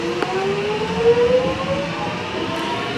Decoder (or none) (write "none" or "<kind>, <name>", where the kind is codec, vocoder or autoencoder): none